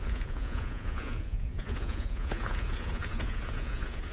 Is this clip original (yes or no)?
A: no